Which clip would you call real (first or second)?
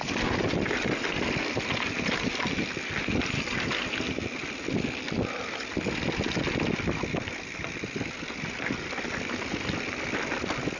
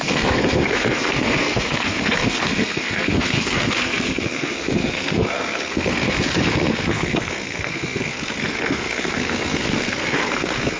first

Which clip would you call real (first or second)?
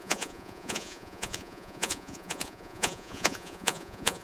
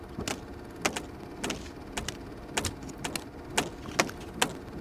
second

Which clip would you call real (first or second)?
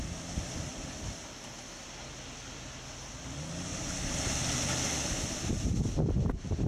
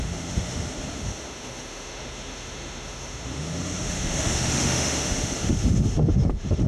first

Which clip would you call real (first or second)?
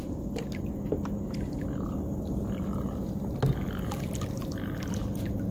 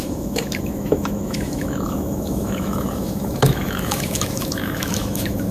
first